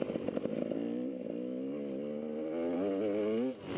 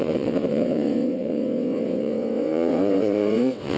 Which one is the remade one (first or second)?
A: second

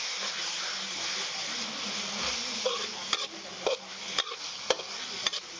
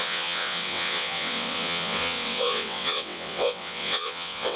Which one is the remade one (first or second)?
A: second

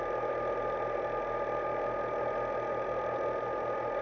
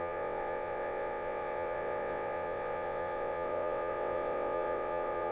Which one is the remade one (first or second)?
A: second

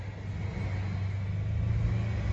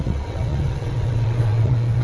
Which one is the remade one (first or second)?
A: second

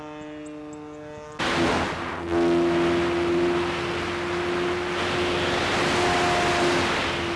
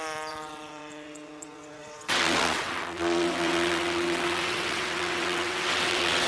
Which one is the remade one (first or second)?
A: second